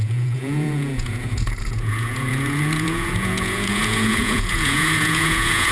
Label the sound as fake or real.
fake